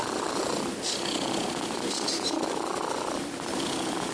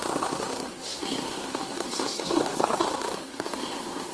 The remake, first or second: second